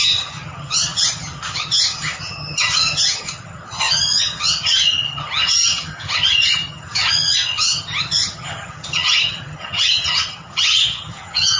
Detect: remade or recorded remade